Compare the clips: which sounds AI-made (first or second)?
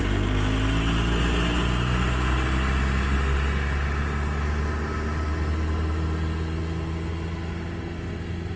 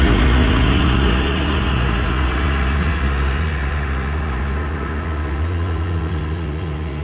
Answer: second